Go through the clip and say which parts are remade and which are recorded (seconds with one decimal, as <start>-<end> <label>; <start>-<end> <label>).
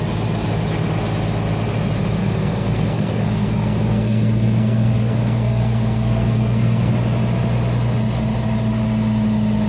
0.0-2.2 recorded; 2.2-6.9 remade; 6.9-9.7 recorded